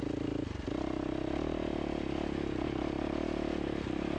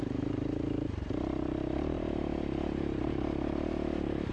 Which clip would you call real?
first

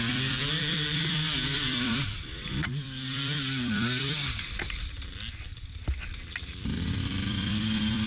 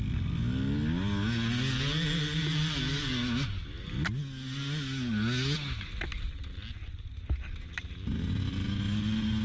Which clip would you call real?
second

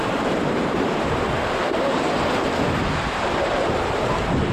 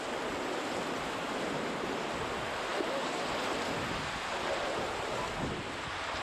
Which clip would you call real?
second